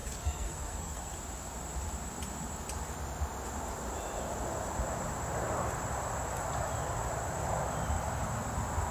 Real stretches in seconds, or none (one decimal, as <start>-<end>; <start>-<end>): 1.1-8.9